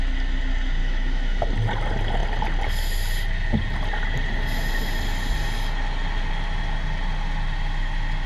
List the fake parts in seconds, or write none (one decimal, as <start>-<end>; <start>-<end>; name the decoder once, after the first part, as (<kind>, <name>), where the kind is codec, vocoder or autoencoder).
0.8-1.5 (autoencoder, DAC-VAE)